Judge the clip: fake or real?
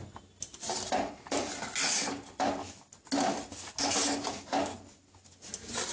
real